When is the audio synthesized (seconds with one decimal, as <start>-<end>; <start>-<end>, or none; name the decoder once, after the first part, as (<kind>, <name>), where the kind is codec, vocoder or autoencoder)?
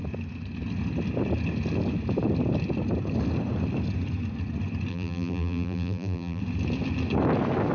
4.9-6.4 (vocoder, BigVGAN v2)